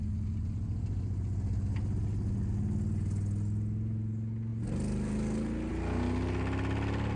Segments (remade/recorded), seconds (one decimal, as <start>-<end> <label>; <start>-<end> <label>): 0.0-7.2 recorded